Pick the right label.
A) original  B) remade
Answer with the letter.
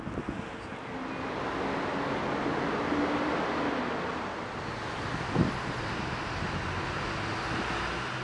A